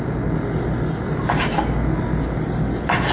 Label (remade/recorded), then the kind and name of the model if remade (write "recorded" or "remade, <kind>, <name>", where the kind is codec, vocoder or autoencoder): recorded